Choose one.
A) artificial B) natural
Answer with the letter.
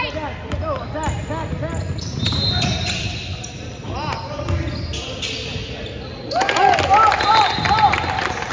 B